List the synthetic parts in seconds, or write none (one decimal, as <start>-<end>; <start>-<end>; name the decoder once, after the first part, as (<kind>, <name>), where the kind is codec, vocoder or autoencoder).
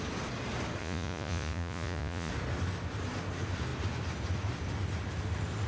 0.8-2.3 (vocoder, Vocos)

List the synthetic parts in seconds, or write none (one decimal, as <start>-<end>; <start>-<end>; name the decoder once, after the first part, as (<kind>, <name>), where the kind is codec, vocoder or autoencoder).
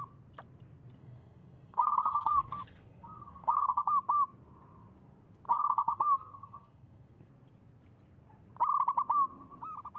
1.0-3.9 (codec, SNAC); 5.5-7.3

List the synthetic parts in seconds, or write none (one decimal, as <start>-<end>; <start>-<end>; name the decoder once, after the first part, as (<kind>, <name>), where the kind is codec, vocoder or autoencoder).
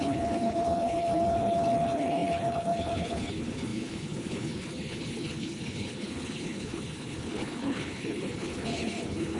0.0-9.4 (codec, HILCodec)